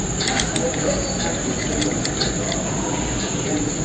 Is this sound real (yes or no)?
yes